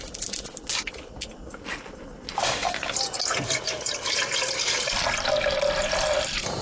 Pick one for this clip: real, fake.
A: real